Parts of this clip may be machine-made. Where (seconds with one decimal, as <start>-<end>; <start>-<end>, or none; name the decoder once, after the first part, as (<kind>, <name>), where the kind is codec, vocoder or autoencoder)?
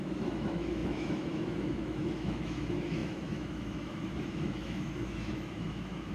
0.0-6.1 (autoencoder, DAC-VAE)